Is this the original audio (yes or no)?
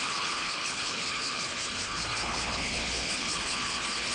no